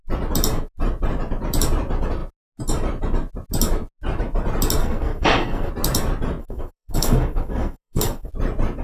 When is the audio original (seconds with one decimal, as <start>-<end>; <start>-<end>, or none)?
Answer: 0.0-4.8; 5.7-6.4; 8.3-8.8

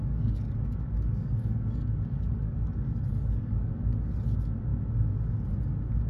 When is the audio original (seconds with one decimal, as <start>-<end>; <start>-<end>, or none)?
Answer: 3.7-6.1

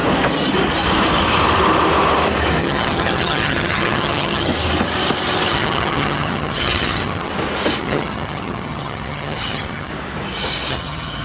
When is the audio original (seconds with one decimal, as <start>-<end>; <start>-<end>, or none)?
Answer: 0.0-2.6; 4.5-5.5; 7.3-7.8; 9.9-10.7

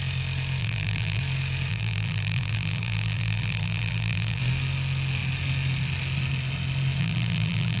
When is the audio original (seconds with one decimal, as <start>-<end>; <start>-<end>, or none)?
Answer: 0.0-0.6; 1.2-1.7; 4.4-7.0

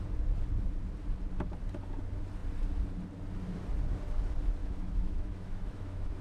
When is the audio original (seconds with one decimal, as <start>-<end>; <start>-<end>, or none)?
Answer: 0.0-4.6

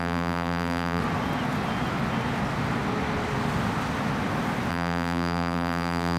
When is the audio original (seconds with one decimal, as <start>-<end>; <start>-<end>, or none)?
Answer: 1.0-4.7